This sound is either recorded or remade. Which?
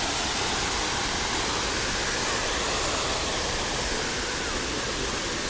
recorded